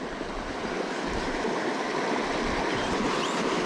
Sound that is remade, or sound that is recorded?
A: recorded